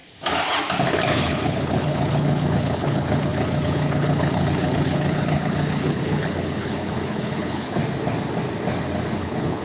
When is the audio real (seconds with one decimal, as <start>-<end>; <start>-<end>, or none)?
0.0-1.1; 7.8-9.2